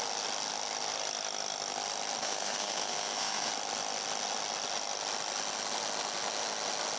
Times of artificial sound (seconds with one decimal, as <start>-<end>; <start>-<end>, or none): 2.2-3.5